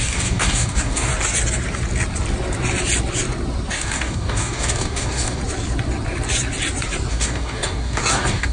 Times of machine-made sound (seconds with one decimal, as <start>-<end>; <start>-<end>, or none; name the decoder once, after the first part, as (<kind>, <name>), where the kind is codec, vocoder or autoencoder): 0.0-1.1 (codec, DAC); 3.7-5.4; 7.1-8.5